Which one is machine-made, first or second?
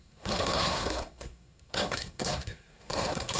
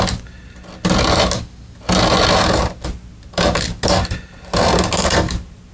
first